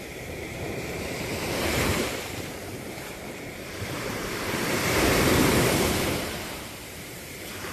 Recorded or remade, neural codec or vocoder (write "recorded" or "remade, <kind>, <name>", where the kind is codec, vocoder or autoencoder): remade, vocoder, BigVGAN v2